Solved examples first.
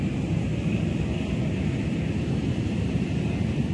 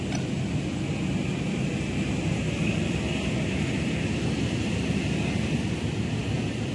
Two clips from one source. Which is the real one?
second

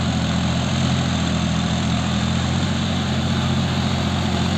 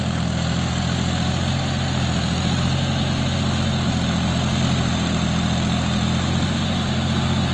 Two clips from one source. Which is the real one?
second